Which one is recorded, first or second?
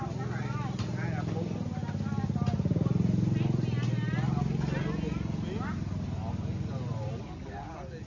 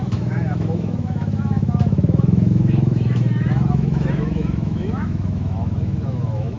first